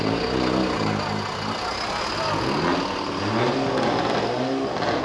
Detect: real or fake real